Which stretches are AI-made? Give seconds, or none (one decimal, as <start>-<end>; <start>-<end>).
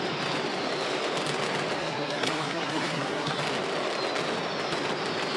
1.8-3.4